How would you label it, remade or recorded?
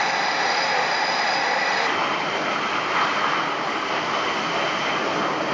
recorded